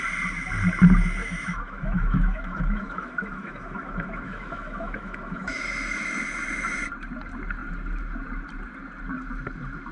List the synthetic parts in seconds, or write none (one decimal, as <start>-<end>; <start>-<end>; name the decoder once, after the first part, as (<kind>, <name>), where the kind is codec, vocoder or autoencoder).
1.2-5.6 (autoencoder, DAC-VAE)